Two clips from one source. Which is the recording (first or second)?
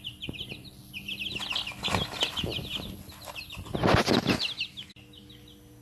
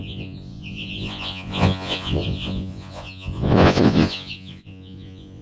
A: first